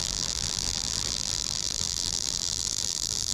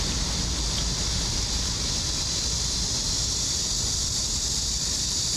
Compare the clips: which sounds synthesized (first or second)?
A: first